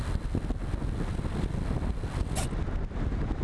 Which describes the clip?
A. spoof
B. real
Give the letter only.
B